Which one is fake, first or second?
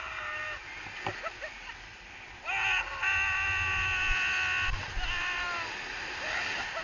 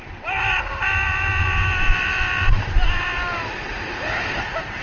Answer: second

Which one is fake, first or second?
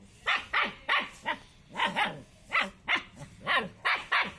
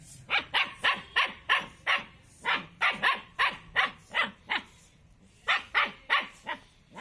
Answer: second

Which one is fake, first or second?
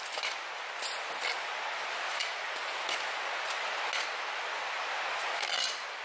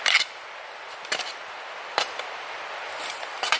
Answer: second